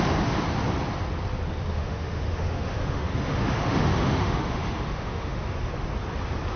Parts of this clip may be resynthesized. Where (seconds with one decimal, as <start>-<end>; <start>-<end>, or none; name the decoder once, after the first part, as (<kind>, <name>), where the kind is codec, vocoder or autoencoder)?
1.7-5.7 (autoencoder, DAC-VAE)